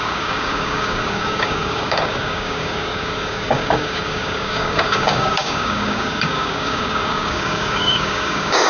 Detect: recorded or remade remade